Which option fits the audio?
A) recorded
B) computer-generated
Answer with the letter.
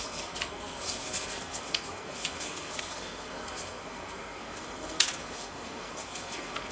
B